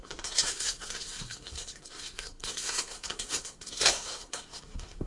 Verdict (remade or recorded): remade